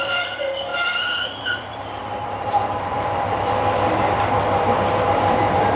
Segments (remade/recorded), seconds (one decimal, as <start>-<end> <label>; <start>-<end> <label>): 0.0-0.7 remade; 0.7-1.4 recorded; 1.4-5.8 remade